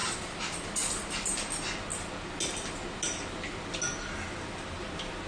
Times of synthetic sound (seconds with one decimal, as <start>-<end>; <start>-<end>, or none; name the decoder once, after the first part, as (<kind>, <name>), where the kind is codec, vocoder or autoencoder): 0.0-1.3 (vocoder, BigVGAN v2)